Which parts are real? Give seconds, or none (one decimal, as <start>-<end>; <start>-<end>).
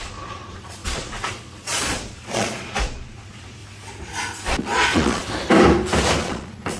3.6-4.6; 5.2-6.2